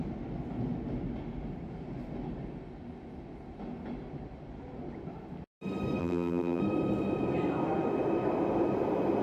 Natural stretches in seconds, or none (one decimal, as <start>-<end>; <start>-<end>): 0.0-6.0; 6.6-9.2

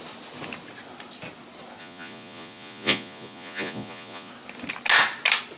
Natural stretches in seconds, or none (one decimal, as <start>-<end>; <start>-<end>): 0.0-1.8; 4.3-5.6

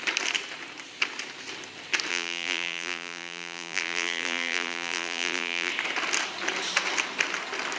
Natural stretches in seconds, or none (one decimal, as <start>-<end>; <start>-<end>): 0.0-2.1; 5.7-7.8

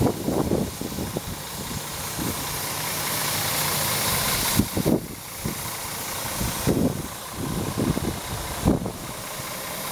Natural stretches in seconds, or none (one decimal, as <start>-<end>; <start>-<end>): 0.0-9.9

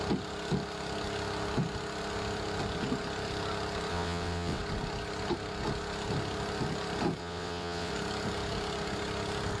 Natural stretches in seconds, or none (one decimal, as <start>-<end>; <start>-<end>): 0.0-3.9; 4.6-7.2; 7.9-9.6